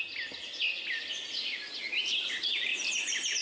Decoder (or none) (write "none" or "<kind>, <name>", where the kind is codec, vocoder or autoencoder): none